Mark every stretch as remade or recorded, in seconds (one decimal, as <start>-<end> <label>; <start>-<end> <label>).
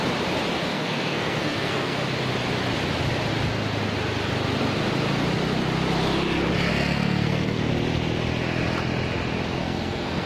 0.0-0.7 recorded; 0.7-2.0 remade; 2.0-6.7 recorded; 6.7-7.7 remade; 7.7-9.6 recorded; 9.6-10.3 remade